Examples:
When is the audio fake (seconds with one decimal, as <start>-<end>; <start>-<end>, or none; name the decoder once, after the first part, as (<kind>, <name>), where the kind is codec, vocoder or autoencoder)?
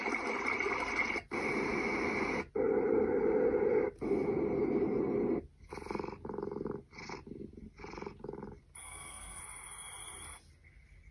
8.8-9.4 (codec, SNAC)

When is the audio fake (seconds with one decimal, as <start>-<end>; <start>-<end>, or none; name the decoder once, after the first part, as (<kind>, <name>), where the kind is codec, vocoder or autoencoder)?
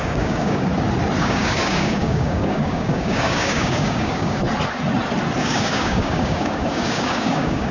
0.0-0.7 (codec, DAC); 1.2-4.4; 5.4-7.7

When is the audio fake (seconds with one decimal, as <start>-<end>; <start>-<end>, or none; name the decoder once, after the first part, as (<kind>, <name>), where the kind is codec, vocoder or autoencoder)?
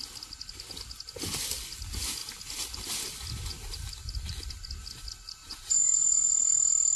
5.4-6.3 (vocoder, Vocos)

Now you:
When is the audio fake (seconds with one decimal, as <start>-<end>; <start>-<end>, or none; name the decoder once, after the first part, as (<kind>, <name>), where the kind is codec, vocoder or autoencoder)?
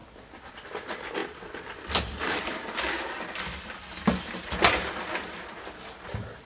none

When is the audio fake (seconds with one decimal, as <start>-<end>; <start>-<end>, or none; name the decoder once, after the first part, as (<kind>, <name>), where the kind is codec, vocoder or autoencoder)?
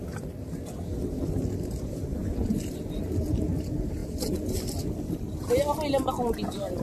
none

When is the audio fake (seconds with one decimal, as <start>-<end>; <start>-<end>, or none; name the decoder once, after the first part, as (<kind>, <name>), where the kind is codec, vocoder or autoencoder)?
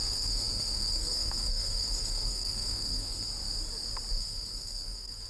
0.0-3.3 (codec, SNAC); 4.1-5.3